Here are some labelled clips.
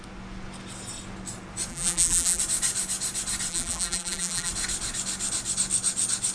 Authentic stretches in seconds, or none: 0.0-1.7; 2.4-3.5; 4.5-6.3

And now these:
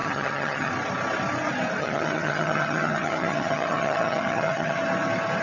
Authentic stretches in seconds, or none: 0.7-1.8; 4.8-5.4

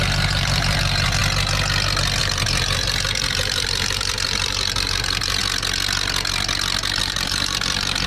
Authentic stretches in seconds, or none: 1.2-2.2; 5.4-7.0

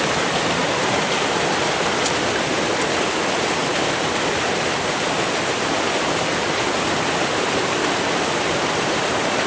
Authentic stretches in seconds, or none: 0.0-9.5

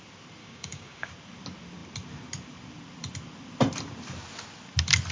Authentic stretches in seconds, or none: 0.0-0.4; 1.1-5.1

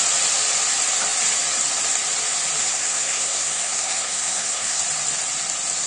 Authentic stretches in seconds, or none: 0.0-2.6; 4.8-5.9

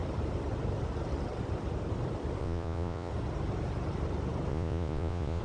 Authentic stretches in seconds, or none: 0.0-2.4; 3.1-4.5